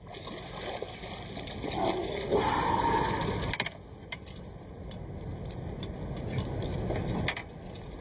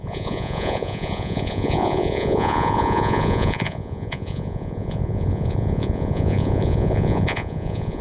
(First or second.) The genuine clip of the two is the first